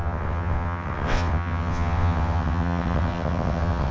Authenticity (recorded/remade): remade